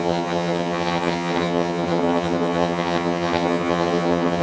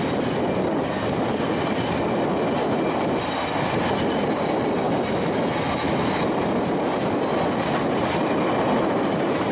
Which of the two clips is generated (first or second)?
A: first